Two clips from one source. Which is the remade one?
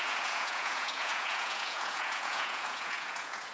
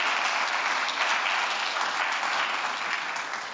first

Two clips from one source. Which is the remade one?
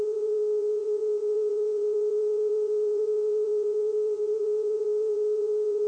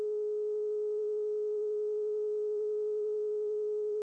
first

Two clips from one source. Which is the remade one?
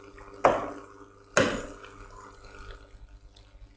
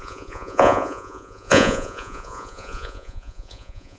second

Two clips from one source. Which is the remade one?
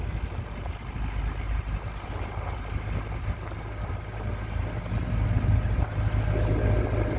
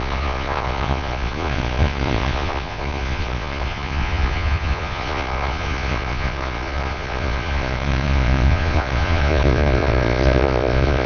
second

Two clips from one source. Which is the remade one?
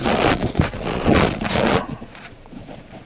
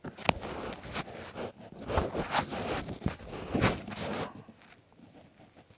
first